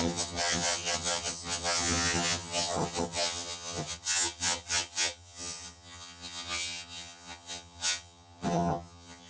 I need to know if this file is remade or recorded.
remade